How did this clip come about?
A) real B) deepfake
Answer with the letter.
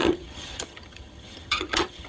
B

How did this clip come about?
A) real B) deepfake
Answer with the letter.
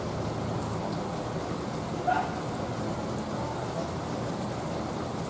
A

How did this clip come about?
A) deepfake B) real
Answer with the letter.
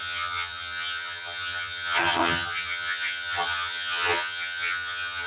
A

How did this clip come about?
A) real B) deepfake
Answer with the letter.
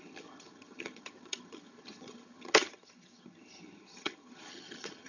B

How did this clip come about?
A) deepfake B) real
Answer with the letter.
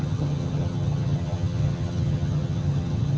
A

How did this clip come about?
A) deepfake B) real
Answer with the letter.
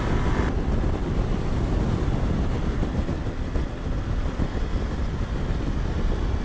B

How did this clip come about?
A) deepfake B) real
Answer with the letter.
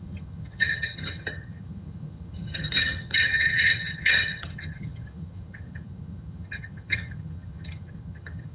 A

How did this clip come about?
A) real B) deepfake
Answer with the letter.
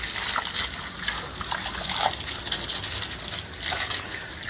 A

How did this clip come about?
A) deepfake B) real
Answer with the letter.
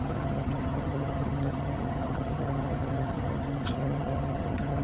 A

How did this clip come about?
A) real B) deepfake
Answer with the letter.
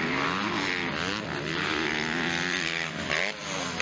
A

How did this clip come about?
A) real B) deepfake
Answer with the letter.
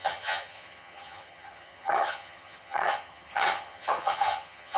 B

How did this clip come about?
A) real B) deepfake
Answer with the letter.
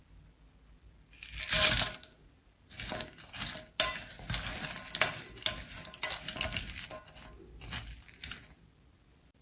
A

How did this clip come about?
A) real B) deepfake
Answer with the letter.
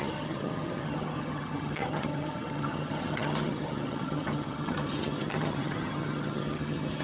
B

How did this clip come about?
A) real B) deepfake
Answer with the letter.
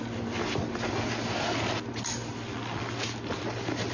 A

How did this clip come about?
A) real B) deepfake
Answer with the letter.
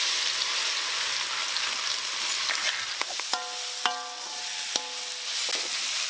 A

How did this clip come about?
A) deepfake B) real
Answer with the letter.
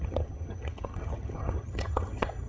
A